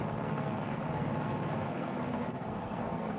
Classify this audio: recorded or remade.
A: remade